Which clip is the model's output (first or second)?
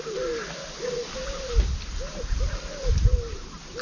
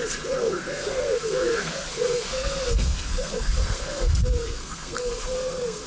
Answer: second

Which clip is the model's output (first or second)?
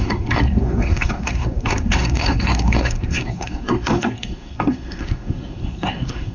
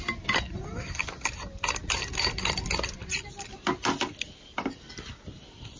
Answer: first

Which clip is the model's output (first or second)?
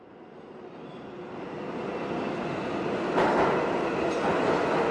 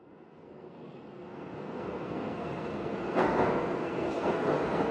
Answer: second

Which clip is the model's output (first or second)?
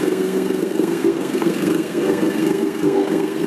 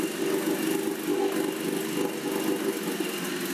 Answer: first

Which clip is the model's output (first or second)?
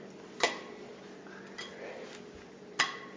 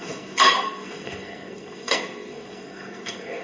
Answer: second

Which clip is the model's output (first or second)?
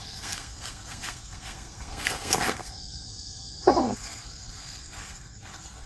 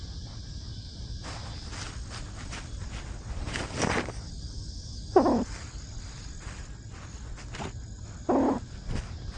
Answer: first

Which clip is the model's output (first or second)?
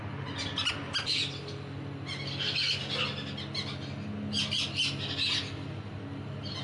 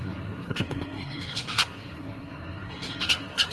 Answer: second